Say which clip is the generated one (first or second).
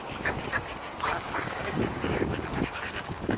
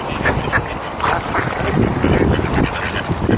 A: first